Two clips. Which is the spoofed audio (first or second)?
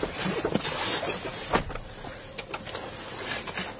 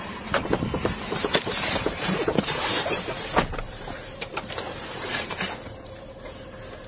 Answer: second